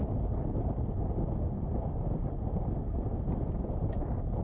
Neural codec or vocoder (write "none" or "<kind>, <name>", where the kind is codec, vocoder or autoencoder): none